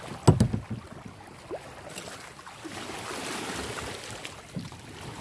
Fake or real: real